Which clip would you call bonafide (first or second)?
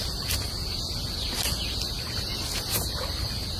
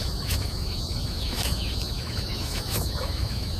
first